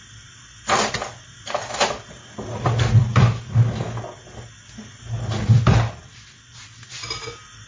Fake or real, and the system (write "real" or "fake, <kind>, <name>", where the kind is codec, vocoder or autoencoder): real